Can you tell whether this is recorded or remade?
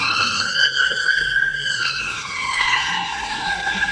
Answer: remade